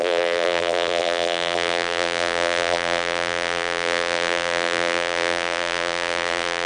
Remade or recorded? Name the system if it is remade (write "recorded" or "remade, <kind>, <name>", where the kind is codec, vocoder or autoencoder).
remade, vocoder, BigVGAN v2